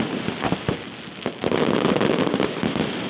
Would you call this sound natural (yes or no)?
yes